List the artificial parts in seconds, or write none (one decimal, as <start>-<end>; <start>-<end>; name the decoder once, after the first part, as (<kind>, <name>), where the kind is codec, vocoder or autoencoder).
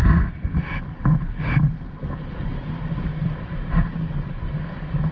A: none